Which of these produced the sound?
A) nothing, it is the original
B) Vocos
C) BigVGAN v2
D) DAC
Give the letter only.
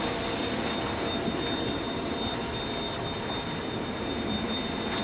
A